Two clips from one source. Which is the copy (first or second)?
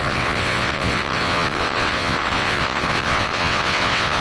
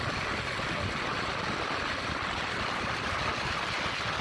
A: first